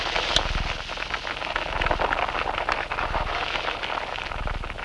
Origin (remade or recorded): recorded